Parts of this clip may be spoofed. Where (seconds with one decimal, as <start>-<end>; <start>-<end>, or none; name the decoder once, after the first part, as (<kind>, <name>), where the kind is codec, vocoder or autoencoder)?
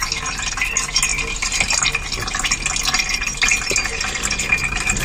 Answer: none